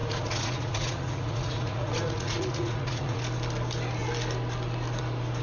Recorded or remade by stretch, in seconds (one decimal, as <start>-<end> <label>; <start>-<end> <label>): 0.0-3.2 remade; 3.2-5.4 recorded